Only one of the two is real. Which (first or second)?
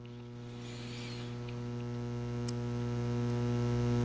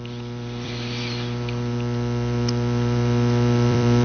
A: first